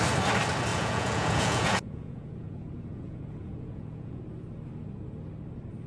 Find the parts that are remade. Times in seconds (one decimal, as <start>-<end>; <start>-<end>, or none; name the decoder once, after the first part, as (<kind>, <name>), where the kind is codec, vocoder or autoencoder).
0.7-4.2 (vocoder, Vocos)